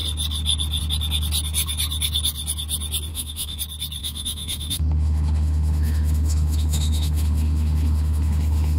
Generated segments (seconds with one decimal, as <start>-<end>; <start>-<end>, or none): 3.1-3.6; 4.0-8.8